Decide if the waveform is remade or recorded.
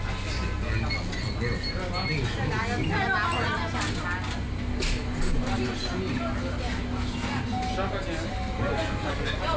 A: recorded